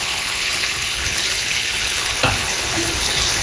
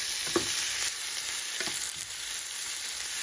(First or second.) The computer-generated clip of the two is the first